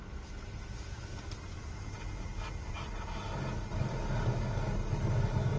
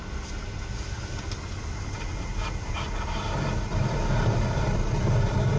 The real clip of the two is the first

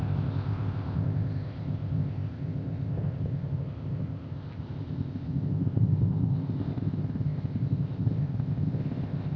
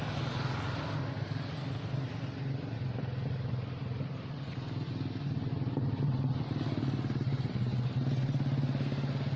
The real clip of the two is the second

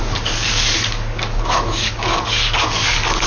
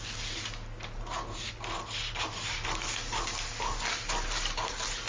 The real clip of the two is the second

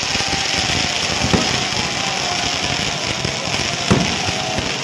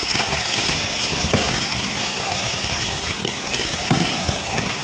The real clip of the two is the first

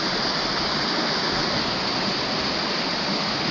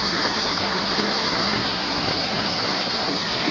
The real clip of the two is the first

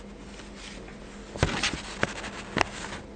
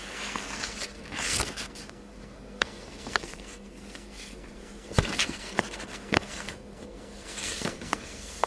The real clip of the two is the first